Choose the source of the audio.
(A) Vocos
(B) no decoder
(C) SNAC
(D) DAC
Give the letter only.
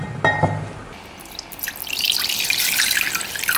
B